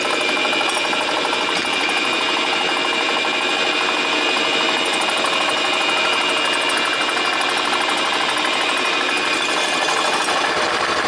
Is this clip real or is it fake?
real